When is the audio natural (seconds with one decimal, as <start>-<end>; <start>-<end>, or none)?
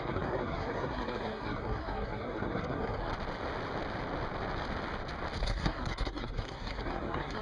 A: 3.1-5.4